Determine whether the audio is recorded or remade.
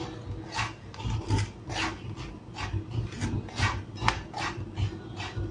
recorded